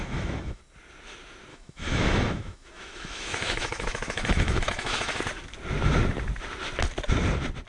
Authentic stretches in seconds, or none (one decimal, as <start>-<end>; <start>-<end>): 0.6-1.5; 5.2-7.7